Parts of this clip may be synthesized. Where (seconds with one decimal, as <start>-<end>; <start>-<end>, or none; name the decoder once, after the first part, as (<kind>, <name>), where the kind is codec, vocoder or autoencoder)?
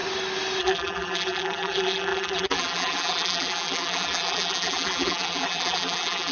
0.6-6.3 (vocoder, BigVGAN v2)